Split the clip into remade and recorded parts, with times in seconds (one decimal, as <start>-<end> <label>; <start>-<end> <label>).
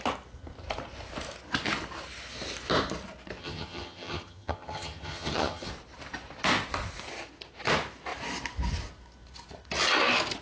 0.0-3.4 recorded; 3.4-5.7 remade; 5.7-10.4 recorded